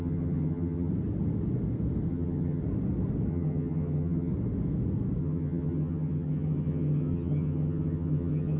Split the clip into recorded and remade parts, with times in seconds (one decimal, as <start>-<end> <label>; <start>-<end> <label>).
0.0-0.9 remade; 0.9-2.1 recorded; 2.1-2.6 remade; 2.6-3.3 recorded; 3.3-4.3 remade; 4.3-5.2 recorded; 5.2-8.6 remade